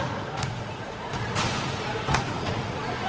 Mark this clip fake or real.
fake